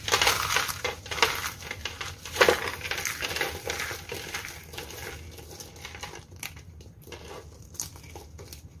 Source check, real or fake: real